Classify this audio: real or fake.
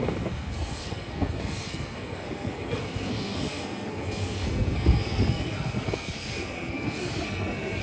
fake